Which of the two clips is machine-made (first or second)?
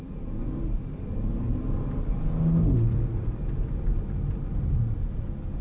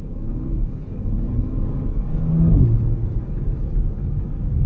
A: second